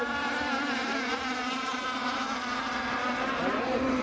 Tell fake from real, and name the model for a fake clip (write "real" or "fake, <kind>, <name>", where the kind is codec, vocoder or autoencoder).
real